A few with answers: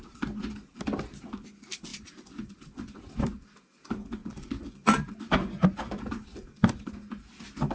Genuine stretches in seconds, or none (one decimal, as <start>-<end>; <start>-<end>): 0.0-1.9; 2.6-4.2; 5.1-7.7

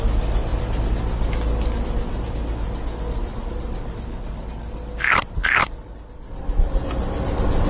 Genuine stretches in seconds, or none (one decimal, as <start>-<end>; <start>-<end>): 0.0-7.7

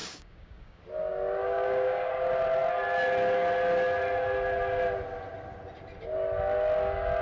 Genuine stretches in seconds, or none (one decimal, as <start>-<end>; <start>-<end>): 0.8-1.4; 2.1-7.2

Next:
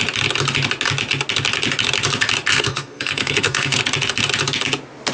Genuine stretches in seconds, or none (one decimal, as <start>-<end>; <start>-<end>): 0.0-2.5; 3.8-5.1

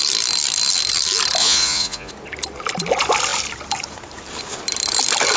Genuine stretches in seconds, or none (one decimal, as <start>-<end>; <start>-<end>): 0.0-1.4; 2.1-5.4

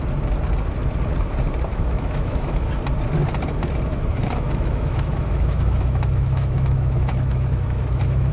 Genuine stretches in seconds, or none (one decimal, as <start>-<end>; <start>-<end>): 0.0-1.7; 2.7-4.1